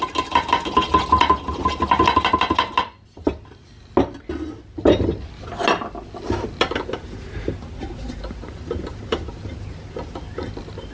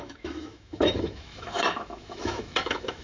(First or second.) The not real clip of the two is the second